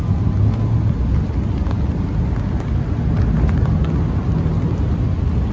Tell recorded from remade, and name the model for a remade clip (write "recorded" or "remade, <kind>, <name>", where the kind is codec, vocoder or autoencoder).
recorded